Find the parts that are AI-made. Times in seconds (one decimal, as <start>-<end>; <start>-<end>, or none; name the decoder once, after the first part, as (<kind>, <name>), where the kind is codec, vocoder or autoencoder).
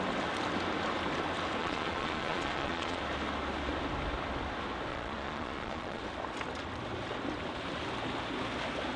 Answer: 1.6-3.0 (vocoder, Vocos); 4.9-6.0